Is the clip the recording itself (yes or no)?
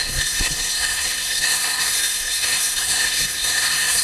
no